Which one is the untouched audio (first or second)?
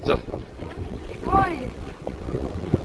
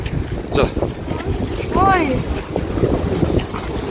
second